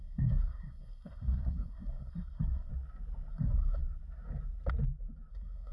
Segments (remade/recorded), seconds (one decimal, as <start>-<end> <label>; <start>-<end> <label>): 0.0-2.7 remade; 2.7-3.3 recorded; 3.3-3.8 remade; 3.8-5.3 recorded; 5.3-5.7 remade